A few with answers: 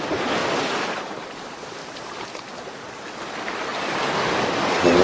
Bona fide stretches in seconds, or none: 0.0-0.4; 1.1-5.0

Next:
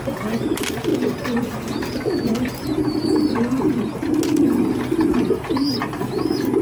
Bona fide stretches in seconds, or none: 0.9-4.4

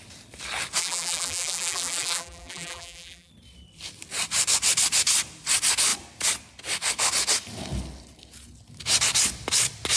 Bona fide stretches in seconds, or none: 0.0-0.8; 3.3-10.0

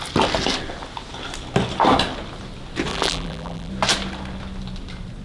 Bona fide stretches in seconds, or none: 0.0-2.9; 3.7-5.2

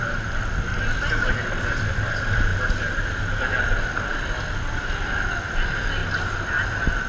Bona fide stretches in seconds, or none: 0.7-1.6